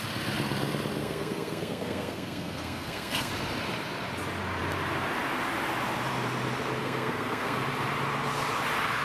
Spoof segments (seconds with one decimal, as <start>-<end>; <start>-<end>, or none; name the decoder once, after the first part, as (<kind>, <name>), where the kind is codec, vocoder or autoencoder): 1.0-3.3 (codec, SNAC); 6.8-7.6